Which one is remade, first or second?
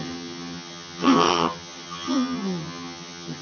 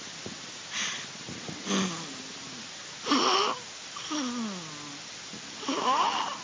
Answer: first